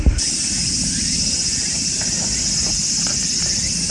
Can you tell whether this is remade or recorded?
recorded